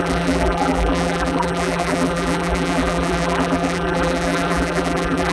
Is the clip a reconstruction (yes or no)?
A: yes